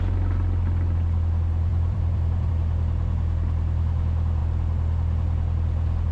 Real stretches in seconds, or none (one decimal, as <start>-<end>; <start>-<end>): 0.0-1.7; 2.5-6.1